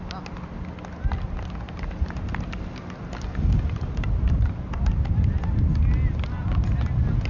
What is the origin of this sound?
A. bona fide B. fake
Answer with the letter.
A